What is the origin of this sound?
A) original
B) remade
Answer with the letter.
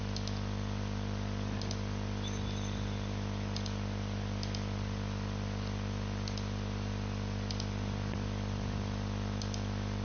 A